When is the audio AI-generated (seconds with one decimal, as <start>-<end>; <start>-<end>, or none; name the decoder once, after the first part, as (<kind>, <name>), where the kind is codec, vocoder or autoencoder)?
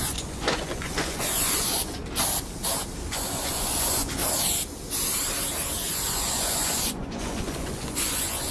0.0-2.0 (vocoder, Vocos); 3.1-4.2; 5.9-8.5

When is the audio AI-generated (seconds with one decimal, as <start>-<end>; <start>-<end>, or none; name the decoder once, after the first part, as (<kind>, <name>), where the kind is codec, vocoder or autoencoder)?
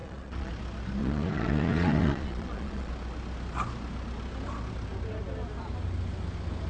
0.0-0.5 (vocoder, Vocos); 1.0-2.9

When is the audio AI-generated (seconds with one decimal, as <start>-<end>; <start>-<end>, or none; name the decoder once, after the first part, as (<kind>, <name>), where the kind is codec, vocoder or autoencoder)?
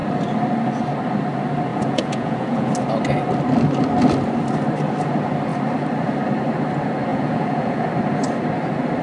1.7-2.7 (vocoder, Vocos); 7.1-7.9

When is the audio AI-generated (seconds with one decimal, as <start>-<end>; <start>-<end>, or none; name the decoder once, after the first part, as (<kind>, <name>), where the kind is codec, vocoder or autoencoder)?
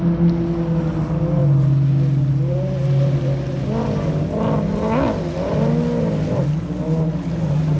none